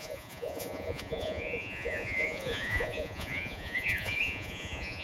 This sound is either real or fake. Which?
fake